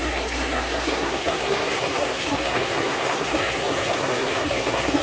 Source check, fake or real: fake